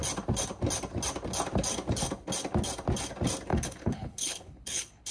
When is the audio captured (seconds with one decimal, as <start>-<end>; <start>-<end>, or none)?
0.0-3.5